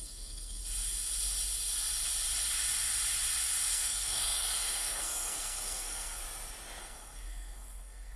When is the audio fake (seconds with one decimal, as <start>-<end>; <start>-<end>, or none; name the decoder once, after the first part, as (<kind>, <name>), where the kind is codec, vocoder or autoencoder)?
0.0-0.6 (codec, SNAC); 3.7-6.2; 6.8-8.2

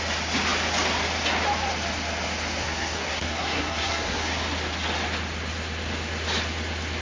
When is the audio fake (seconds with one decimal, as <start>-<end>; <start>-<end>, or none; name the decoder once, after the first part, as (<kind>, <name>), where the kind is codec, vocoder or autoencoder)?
2.6-4.3 (codec, SNAC)

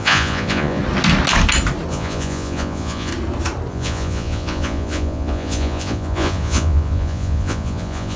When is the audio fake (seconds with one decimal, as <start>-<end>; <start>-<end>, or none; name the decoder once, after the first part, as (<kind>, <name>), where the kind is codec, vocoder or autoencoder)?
0.0-0.8 (vocoder, Vocos); 1.9-3.1; 3.7-8.2

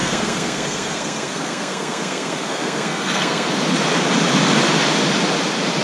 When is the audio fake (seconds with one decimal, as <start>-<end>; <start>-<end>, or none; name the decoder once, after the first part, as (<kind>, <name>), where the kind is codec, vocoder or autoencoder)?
0.0-3.5 (codec, SNAC)

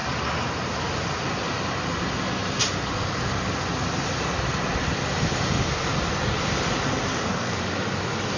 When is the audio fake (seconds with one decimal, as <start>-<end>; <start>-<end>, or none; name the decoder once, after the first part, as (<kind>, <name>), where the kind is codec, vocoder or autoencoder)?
7.1-7.6 (codec, DAC)

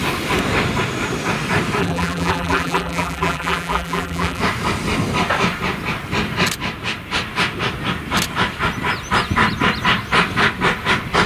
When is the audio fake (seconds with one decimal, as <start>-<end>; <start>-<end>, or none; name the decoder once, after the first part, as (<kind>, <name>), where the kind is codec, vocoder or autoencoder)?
1.8-4.4 (vocoder, BigVGAN v2)

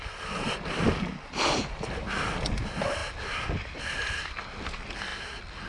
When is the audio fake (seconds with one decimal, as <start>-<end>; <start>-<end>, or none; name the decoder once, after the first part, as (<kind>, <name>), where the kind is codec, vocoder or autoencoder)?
none